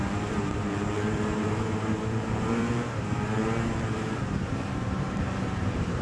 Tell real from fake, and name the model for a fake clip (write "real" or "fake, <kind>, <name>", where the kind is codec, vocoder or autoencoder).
fake, vocoder, BigVGAN v2